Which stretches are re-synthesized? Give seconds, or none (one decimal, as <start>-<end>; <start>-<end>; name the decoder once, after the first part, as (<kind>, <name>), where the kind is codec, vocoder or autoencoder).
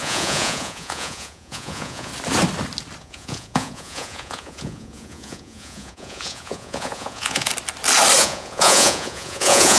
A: 0.0-2.1 (vocoder, Vocos); 3.0-7.5; 8.2-9.8